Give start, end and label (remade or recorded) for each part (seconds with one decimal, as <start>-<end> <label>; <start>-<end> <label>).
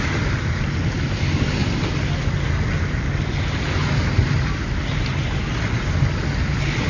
0.0-6.9 recorded